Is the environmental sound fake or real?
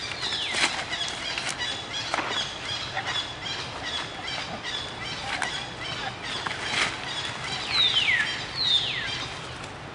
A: real